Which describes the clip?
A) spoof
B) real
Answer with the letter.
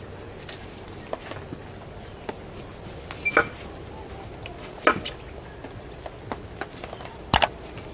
B